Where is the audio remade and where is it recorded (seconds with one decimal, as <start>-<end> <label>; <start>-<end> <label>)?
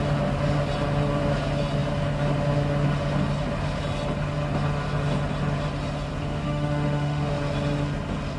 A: 0.0-6.3 recorded; 6.3-7.3 remade; 7.3-8.4 recorded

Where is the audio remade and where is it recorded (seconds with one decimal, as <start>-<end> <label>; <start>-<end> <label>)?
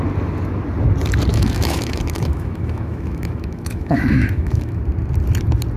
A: 0.0-1.3 recorded; 1.3-4.8 remade; 4.8-5.8 recorded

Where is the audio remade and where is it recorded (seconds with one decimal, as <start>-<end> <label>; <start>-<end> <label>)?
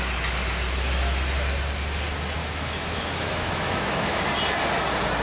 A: 0.0-2.4 recorded; 2.4-4.2 remade; 4.2-5.2 recorded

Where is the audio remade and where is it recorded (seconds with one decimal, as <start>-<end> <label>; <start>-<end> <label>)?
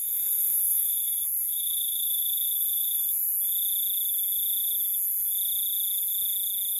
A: 0.0-3.3 remade; 3.3-6.8 recorded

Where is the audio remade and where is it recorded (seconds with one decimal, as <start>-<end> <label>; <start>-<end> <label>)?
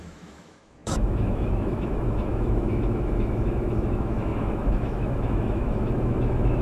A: 0.0-6.6 remade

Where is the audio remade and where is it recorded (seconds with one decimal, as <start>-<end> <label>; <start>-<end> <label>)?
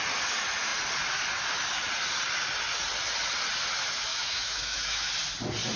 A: 0.0-4.1 recorded; 4.1-5.1 remade; 5.1-5.8 recorded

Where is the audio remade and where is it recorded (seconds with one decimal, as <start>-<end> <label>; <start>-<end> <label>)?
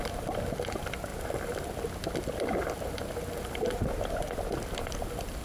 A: 0.0-5.4 recorded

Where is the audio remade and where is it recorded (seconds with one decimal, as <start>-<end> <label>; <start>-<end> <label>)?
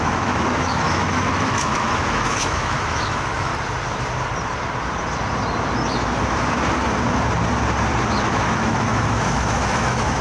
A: 0.0-3.5 remade; 3.5-8.2 recorded; 8.2-10.2 remade